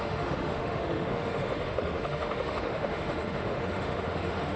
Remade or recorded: remade